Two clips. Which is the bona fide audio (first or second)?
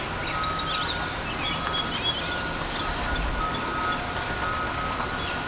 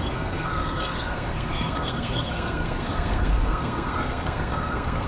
first